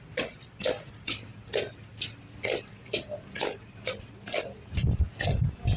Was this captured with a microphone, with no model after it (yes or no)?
yes